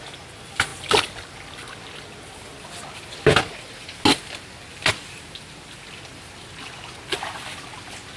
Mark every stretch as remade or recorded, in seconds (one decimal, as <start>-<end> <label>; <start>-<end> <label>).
0.0-8.2 recorded